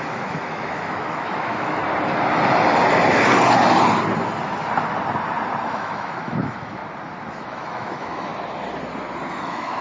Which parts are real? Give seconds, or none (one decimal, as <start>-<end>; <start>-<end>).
1.8-5.6; 6.8-7.3; 8.3-9.3